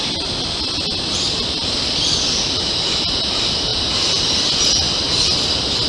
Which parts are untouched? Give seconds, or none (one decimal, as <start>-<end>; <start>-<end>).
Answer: 0.0-5.9